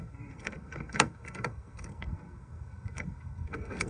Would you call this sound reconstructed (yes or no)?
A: yes